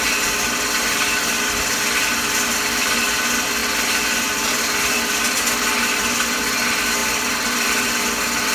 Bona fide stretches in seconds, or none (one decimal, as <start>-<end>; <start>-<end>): 0.0-3.6; 5.0-7.0; 7.9-8.5